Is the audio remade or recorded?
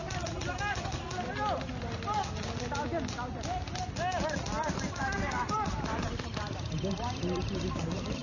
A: recorded